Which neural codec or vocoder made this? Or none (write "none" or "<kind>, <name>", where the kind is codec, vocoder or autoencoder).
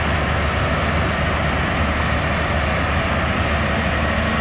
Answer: none